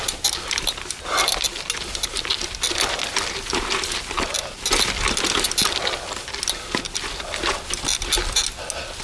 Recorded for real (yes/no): yes